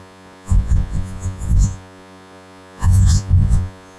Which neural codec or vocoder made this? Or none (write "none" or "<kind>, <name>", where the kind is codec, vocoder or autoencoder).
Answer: vocoder, Vocos